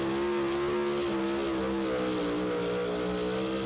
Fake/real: real